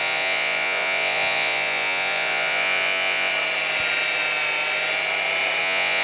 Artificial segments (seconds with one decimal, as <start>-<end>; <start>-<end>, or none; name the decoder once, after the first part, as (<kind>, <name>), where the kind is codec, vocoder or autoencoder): 0.0-3.3 (vocoder, Vocos); 5.6-6.0